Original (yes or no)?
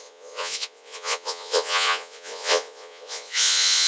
no